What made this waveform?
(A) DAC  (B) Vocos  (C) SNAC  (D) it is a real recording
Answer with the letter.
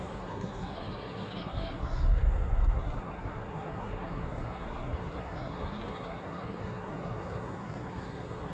C